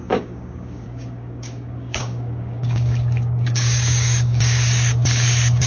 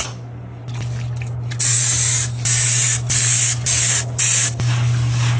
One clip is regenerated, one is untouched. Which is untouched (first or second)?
second